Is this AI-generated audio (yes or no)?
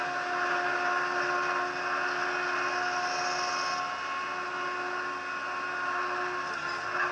no